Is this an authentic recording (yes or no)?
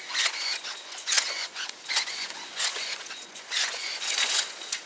no